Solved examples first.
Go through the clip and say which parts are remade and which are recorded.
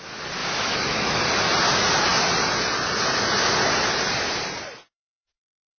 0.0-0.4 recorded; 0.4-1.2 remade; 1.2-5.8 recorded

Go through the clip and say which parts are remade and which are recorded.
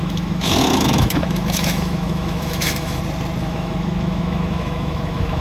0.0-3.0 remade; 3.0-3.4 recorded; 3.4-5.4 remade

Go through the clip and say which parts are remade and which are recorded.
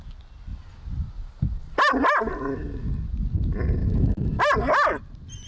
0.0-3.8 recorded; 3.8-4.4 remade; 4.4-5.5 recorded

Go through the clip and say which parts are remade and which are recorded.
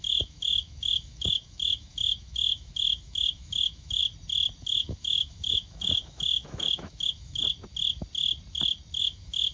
0.0-4.0 remade; 4.0-4.6 recorded; 4.6-7.4 remade; 7.4-9.0 recorded; 9.0-9.5 remade